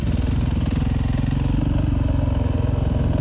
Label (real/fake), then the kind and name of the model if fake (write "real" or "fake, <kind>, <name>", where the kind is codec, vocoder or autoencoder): real